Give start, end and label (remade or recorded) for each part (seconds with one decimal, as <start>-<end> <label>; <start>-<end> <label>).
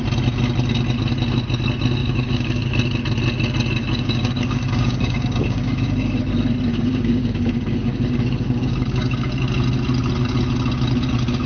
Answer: 0.0-2.0 recorded; 2.0-2.7 remade; 2.7-3.8 recorded; 3.8-6.2 remade; 6.2-6.7 recorded; 6.7-9.3 remade; 9.3-11.5 recorded